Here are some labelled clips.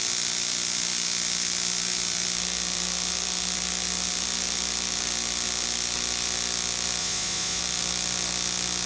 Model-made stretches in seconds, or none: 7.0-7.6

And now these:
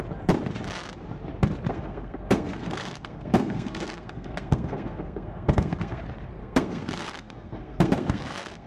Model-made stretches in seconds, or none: 1.7-6.0; 6.4-8.7

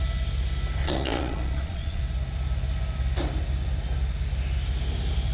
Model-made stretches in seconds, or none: 0.8-2.0

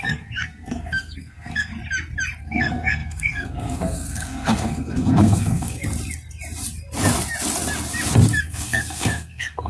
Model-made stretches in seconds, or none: 0.0-1.7; 2.4-5.8; 8.4-9.7

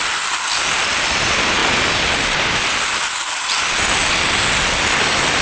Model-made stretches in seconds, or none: none

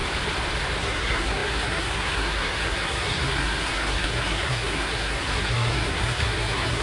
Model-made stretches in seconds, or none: 0.8-6.8

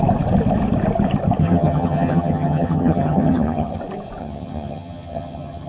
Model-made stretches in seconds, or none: 1.4-3.8; 4.2-5.7